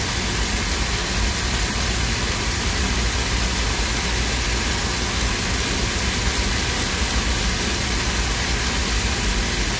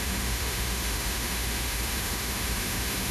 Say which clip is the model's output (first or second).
second